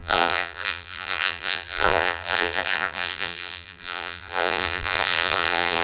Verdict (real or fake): fake